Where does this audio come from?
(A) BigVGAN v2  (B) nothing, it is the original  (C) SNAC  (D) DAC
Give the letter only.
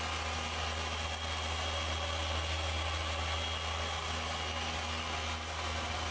B